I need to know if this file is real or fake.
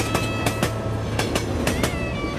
real